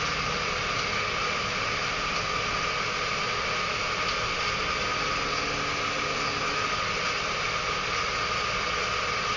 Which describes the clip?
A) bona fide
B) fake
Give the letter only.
A